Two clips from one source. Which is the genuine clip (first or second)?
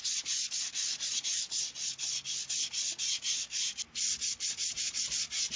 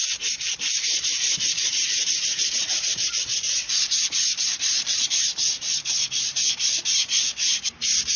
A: first